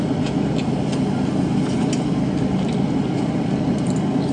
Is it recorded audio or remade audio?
recorded